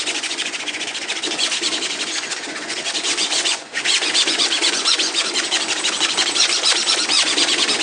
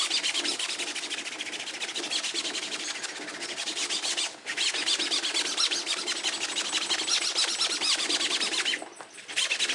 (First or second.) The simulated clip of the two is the first